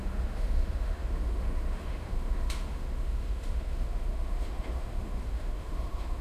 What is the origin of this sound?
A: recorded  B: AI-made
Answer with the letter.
B